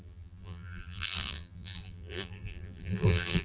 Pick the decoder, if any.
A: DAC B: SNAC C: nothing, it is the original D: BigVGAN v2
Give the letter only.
D